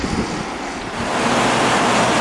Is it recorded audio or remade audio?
recorded